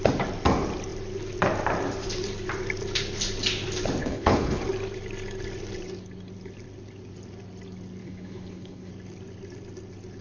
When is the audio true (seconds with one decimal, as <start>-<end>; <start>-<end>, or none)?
0.0-4.0; 4.6-8.0; 8.9-10.2